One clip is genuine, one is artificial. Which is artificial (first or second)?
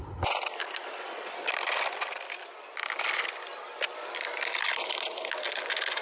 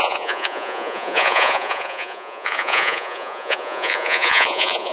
second